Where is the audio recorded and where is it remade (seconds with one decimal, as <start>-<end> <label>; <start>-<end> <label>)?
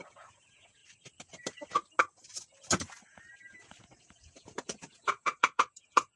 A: 0.0-0.8 remade; 0.8-4.0 recorded; 4.0-6.2 remade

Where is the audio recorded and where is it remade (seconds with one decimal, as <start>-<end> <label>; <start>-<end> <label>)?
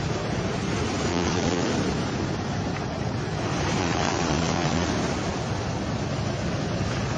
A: 0.0-1.1 recorded; 1.1-1.7 remade; 1.7-3.8 recorded; 3.8-4.9 remade; 4.9-7.2 recorded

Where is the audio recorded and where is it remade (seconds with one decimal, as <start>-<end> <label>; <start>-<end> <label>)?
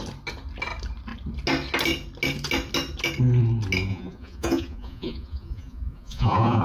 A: 0.0-3.9 recorded; 3.9-6.6 remade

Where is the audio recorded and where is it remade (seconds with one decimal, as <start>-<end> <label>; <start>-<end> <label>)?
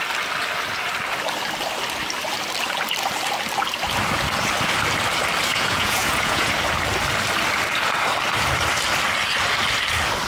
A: 0.0-5.5 recorded; 5.5-6.5 remade; 6.5-10.3 recorded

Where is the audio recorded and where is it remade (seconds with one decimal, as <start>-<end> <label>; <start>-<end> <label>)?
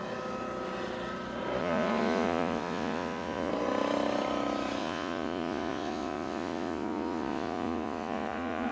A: 0.0-1.6 recorded; 1.6-3.5 remade; 3.5-4.8 recorded; 4.8-8.7 remade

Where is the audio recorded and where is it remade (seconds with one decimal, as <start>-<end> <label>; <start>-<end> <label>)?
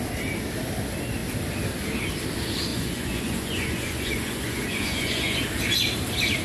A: 0.0-2.7 recorded; 2.7-5.4 remade; 5.4-6.4 recorded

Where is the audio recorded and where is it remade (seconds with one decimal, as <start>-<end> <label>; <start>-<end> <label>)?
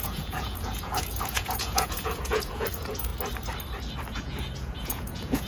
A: 0.0-3.1 remade; 3.1-4.1 recorded; 4.1-5.5 remade